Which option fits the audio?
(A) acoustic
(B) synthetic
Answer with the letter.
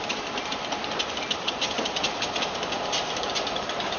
B